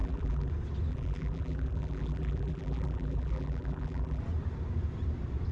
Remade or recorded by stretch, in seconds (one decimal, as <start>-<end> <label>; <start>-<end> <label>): 0.0-0.5 remade; 0.5-0.9 recorded; 0.9-4.2 remade; 4.2-5.5 recorded